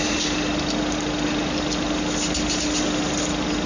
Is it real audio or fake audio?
real